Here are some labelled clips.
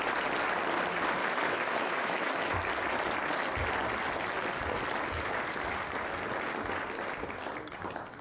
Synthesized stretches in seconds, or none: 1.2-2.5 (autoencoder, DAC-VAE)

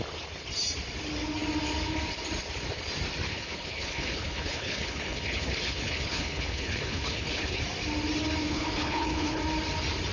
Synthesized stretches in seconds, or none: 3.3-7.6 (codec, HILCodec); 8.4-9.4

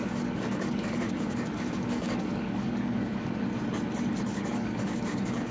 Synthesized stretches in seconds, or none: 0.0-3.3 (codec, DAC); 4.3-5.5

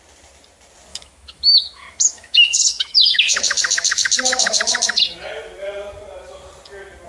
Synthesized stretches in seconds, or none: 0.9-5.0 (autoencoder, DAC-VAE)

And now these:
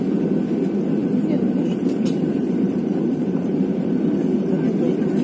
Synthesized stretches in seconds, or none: 1.0-4.0 (vocoder, BigVGAN v2)

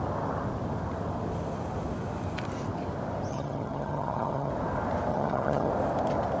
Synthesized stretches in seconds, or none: 3.3-4.5 (vocoder, HiFi-GAN); 5.1-5.7